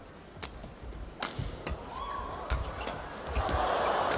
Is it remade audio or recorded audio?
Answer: recorded